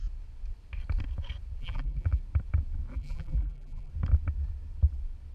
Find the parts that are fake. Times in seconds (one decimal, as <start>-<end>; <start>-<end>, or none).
1.6-2.2; 2.9-3.9